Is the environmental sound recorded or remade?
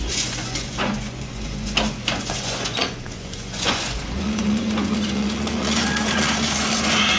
remade